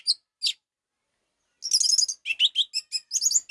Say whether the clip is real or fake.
real